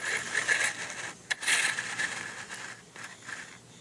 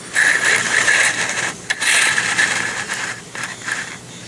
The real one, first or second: first